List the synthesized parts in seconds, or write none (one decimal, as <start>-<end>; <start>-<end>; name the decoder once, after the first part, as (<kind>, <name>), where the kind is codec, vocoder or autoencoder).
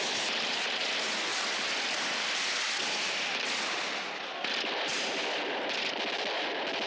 1.3-5.4 (vocoder, BigVGAN v2)